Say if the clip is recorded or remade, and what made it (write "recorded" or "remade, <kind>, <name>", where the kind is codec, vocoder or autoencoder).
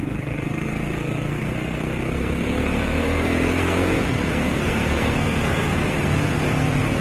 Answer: remade, codec, SNAC